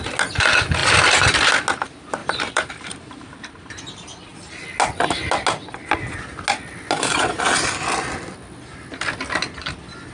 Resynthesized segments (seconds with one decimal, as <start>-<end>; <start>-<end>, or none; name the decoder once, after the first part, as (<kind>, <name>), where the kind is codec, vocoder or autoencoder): 2.2-3.8 (vocoder, BigVGAN v2)